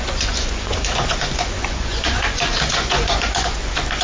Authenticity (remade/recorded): remade